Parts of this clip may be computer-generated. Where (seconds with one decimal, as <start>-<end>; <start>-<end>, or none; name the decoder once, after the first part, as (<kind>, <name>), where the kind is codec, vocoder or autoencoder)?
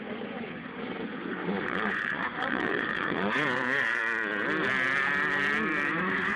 0.0-4.0 (vocoder, Vocos); 5.9-6.4